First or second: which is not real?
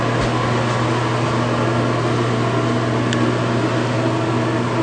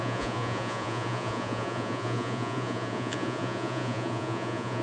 second